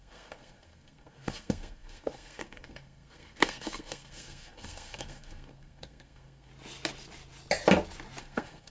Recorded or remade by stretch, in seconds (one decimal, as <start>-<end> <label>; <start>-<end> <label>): 0.0-6.5 remade; 6.5-8.2 recorded; 8.2-8.7 remade